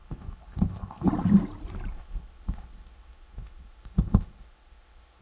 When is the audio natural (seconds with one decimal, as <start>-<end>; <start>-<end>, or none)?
1.1-1.9

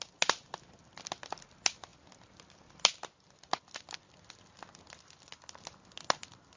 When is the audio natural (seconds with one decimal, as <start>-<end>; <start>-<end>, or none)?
0.0-6.6

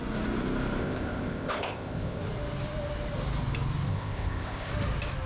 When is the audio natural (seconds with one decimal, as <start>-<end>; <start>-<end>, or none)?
0.0-0.8; 2.2-3.9; 4.7-5.3

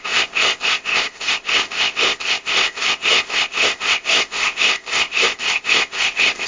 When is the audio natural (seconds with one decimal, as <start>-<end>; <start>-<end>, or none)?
none

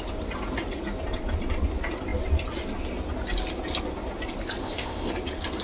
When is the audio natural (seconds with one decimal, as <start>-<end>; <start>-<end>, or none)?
0.0-4.6; 5.1-5.6

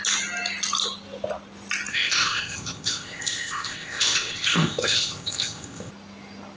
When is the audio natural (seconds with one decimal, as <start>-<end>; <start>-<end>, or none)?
0.0-1.9; 5.9-6.6

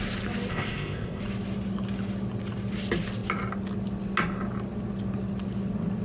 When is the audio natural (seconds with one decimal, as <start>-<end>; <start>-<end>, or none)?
0.0-0.5; 1.2-6.0